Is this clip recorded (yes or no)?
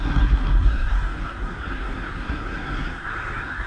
no